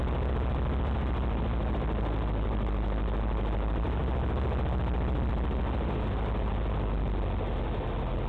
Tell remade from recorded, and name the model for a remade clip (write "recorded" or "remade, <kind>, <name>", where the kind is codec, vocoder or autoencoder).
recorded